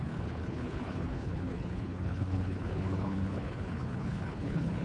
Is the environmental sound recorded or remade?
remade